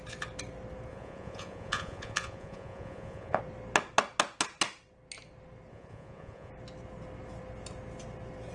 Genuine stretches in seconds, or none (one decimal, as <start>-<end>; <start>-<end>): 0.0-0.9; 3.4-5.7; 6.5-8.5